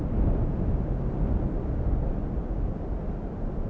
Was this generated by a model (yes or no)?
no